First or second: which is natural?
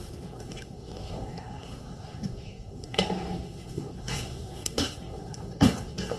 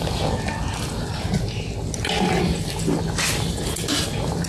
second